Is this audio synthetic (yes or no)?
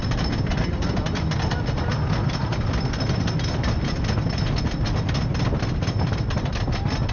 no